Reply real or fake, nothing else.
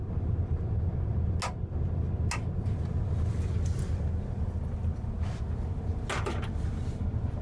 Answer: real